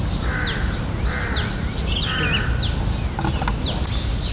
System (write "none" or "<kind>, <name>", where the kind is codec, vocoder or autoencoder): none